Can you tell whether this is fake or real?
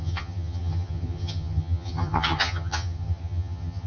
fake